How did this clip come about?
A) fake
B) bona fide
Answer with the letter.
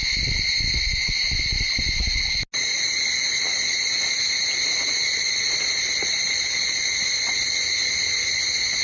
B